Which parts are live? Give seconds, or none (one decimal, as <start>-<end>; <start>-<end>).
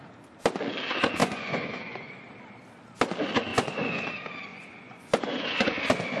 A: 0.0-1.2; 2.1-3.5; 4.1-4.5; 5.8-6.2